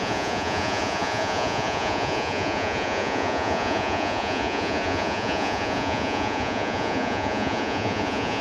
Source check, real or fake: fake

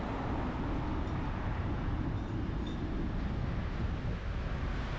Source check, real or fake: real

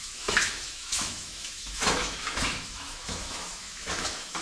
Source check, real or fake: fake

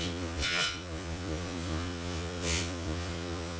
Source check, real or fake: fake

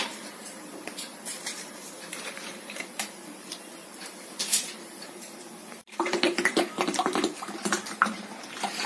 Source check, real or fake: fake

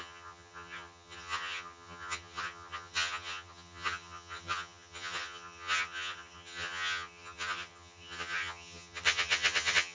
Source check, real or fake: fake